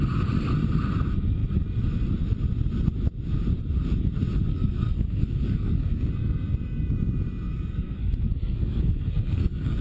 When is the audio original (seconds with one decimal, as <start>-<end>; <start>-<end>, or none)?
0.0-4.5; 6.1-7.5